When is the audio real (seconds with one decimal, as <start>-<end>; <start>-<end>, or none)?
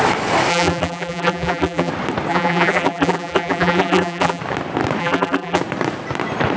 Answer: 0.0-0.5; 1.9-2.3; 4.4-5.0; 5.6-6.6